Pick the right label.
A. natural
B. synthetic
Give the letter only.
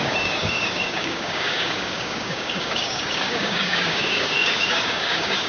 B